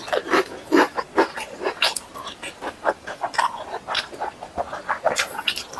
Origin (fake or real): real